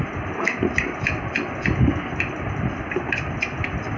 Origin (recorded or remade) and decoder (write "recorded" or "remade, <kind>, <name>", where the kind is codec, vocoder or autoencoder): recorded